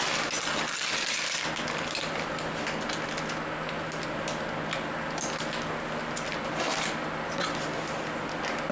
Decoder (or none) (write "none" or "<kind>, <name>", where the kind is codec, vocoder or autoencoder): none